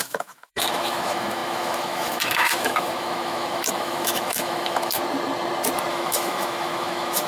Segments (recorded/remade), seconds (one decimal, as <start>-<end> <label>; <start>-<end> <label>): 0.0-5.0 remade; 5.0-5.9 recorded; 5.9-7.3 remade